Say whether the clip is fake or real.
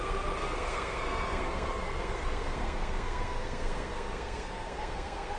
fake